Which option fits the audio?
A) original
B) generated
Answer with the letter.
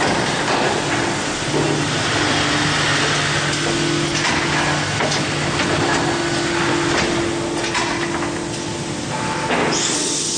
A